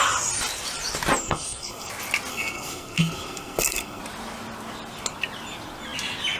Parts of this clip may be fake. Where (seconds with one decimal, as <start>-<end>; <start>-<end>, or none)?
1.2-1.9; 2.3-4.0